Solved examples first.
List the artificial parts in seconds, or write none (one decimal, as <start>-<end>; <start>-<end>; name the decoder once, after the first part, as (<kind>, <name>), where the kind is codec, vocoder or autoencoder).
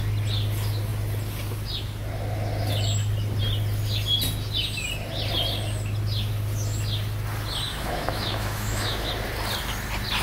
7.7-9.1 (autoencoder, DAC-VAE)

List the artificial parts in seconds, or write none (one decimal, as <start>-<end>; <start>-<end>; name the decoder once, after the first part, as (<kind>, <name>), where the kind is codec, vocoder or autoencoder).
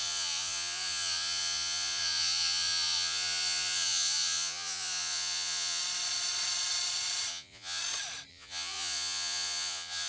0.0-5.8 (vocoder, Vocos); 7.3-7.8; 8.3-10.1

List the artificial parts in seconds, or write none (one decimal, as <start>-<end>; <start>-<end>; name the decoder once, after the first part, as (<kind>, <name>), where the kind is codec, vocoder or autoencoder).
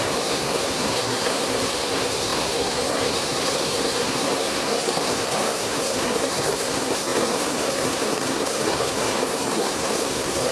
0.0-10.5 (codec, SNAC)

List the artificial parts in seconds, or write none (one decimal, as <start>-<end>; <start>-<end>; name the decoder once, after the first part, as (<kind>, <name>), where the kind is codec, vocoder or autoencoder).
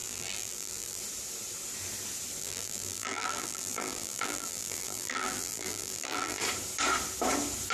0.0-1.0 (vocoder, BigVGAN v2); 2.4-6.4